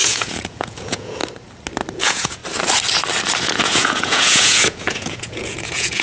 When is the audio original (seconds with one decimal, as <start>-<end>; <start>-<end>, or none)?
1.2-1.9; 2.4-3.4